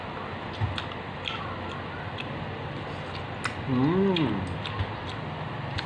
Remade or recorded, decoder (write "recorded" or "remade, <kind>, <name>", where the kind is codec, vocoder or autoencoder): recorded